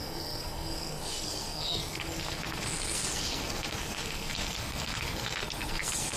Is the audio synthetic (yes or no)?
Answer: yes